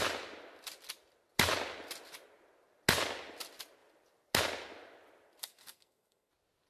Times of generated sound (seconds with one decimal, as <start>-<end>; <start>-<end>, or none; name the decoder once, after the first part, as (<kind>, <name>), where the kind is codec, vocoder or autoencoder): 5.4-6.3 (codec, SNAC)